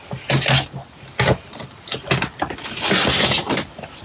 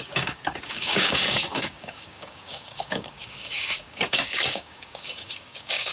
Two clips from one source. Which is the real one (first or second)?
first